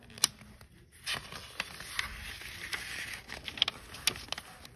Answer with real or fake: real